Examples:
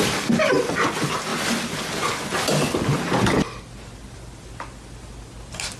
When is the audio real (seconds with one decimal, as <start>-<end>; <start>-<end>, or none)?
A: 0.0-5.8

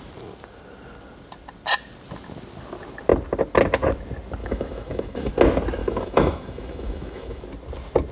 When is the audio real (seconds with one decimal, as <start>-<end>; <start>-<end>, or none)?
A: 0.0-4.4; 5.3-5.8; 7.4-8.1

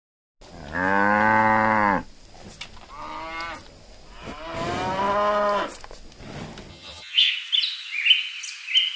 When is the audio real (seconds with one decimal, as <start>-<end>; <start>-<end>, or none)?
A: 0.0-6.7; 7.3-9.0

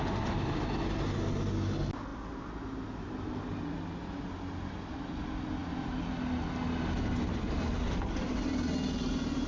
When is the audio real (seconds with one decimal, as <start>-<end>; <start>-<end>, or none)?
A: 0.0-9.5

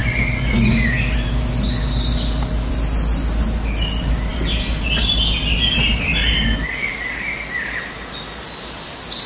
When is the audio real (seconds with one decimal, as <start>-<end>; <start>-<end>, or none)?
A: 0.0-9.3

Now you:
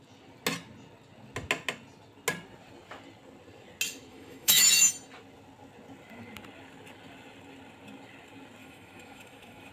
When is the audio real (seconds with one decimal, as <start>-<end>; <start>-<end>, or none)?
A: 0.0-4.1; 4.9-8.6

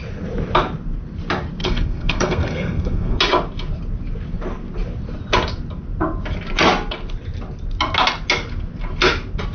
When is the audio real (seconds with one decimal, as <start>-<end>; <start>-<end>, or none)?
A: 0.0-1.6; 3.2-9.5